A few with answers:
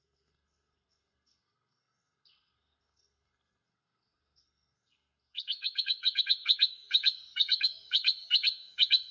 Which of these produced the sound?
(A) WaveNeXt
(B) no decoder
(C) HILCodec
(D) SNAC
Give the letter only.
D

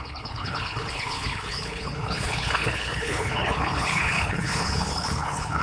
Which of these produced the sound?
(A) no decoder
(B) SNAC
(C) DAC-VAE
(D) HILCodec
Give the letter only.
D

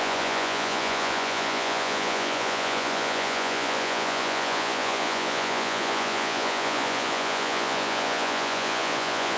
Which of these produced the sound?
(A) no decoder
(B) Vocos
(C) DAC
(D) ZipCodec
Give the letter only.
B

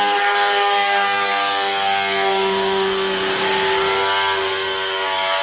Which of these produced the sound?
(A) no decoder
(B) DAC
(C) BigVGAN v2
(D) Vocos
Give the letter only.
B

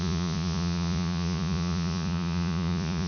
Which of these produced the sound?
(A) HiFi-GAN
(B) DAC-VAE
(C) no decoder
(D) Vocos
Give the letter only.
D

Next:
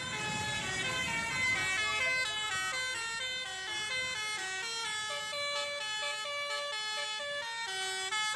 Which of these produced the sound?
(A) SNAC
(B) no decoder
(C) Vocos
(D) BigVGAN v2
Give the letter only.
B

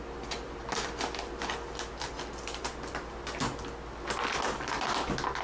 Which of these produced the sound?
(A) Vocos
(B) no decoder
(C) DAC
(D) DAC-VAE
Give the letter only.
B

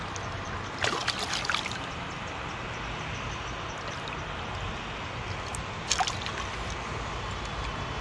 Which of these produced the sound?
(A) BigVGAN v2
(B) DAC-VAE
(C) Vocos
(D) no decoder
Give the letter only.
D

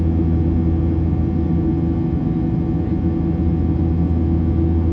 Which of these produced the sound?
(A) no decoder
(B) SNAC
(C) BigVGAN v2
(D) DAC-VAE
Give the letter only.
A